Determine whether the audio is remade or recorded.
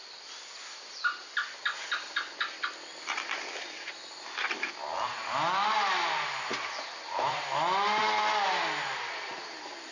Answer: recorded